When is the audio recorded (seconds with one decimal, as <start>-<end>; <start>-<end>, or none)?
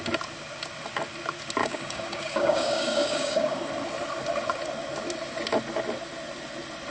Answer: 0.0-1.6; 3.7-6.9